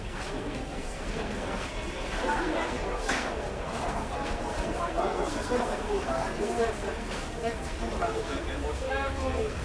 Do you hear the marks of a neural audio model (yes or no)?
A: yes